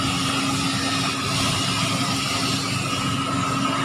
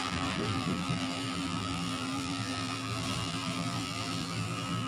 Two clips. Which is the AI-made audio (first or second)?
second